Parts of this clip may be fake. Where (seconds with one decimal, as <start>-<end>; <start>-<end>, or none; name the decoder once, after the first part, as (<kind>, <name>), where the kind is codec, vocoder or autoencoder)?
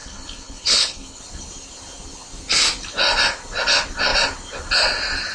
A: 0.0-1.2 (codec, HILCodec)